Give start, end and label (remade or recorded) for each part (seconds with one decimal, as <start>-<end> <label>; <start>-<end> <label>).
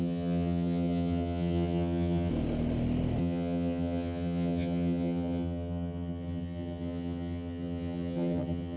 0.0-2.3 remade; 2.3-3.2 recorded; 3.2-8.8 remade